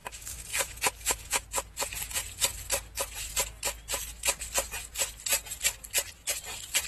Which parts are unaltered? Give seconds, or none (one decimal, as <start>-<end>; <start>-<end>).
1.4-6.9